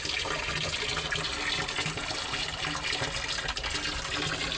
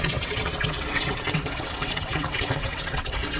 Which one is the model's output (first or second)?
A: second